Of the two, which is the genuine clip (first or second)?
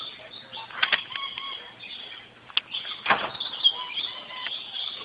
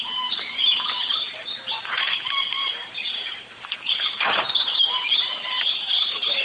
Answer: first